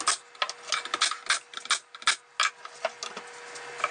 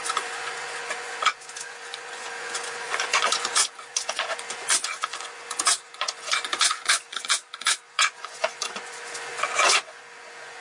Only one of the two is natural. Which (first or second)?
first